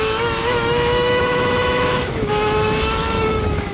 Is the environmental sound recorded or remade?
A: remade